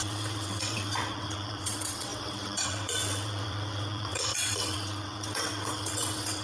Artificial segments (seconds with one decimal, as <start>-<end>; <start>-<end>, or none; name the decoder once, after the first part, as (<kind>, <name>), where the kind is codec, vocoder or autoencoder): 0.0-6.4 (vocoder, WaveNeXt)